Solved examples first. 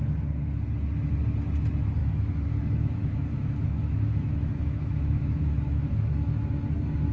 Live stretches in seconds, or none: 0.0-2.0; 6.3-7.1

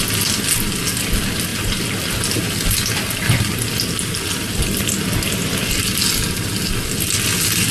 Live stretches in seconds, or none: 0.0-7.7

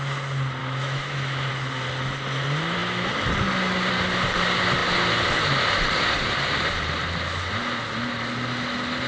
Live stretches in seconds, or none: 0.0-0.6; 1.5-9.1